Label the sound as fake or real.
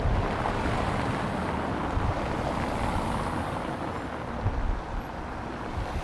real